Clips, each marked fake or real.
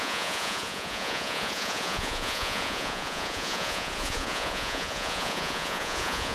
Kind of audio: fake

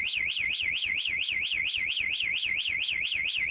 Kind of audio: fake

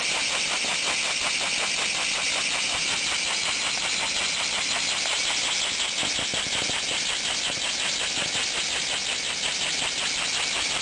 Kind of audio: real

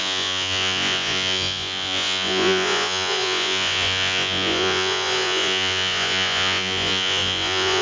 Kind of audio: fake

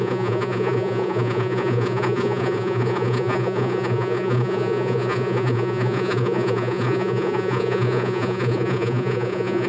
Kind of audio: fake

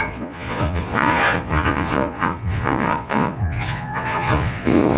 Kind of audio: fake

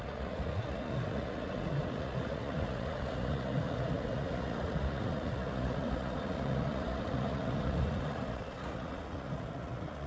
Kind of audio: fake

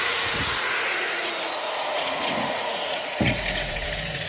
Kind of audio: fake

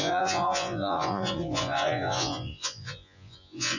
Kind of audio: fake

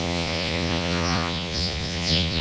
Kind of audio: fake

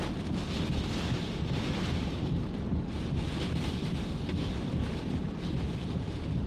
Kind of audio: real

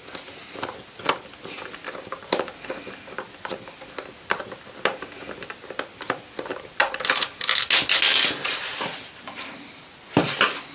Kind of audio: real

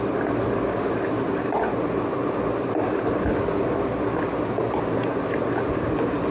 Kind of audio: real